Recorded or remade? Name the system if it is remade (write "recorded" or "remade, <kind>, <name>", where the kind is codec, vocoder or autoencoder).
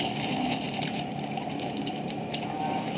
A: remade, vocoder, BigVGAN v2